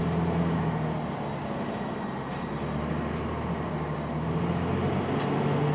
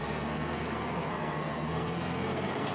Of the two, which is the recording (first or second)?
first